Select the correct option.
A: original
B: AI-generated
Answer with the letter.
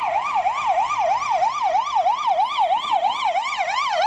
A